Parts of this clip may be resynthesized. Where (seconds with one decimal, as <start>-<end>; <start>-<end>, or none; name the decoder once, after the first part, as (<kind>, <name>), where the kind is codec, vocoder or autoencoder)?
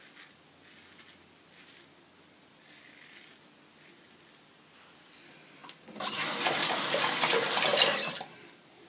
5.6-7.3 (vocoder, BigVGAN v2); 7.7-8.9